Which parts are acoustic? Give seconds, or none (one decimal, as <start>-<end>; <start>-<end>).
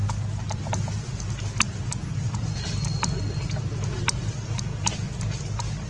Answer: 0.0-5.9